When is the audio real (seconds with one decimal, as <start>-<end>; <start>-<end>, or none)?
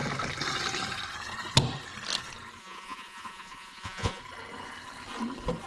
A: 0.0-2.6; 4.2-5.7